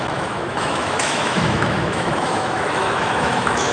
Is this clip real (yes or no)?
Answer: no